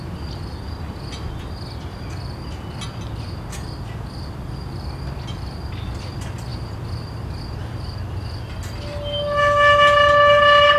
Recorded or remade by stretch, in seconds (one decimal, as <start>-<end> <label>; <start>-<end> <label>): 0.0-10.8 recorded